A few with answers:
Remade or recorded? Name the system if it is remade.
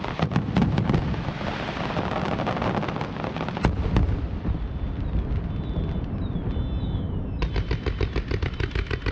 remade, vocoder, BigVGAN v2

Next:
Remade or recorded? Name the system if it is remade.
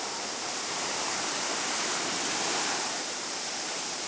remade, vocoder, BigVGAN v2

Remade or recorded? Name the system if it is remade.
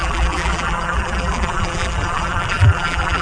remade, vocoder, BigVGAN v2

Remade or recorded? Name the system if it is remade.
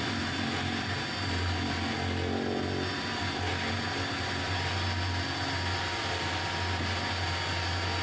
recorded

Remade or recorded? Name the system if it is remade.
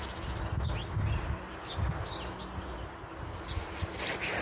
recorded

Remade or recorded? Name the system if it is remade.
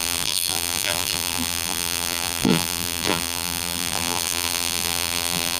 remade, vocoder, BigVGAN v2